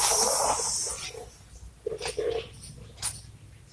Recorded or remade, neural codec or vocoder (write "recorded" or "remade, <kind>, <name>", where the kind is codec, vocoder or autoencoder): recorded